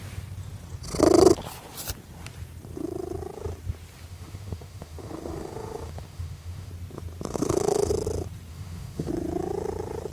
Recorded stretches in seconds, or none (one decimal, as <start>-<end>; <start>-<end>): 0.0-4.1; 6.7-7.3; 7.9-8.5; 9.1-10.1